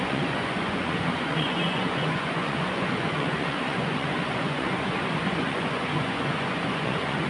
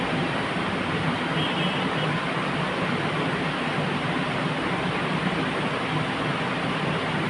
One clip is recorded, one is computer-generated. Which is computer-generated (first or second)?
first